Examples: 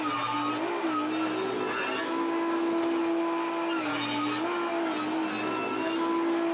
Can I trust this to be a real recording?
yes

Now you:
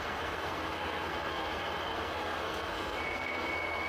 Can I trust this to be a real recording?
no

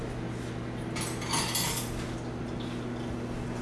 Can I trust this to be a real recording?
yes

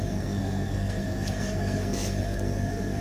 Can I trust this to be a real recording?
no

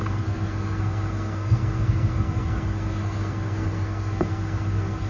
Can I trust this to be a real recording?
no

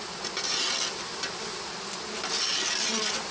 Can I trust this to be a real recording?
yes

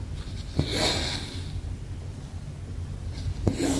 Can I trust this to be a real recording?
yes